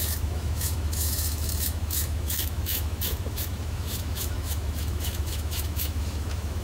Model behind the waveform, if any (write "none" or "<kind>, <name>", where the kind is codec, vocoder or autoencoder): autoencoder, DAC-VAE